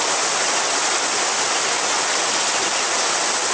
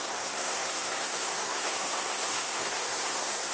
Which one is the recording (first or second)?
first